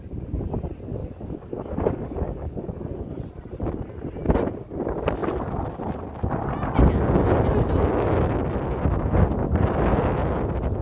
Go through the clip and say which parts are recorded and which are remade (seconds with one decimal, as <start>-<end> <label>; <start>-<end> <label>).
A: 0.0-1.0 recorded; 1.0-3.0 remade; 3.0-10.8 recorded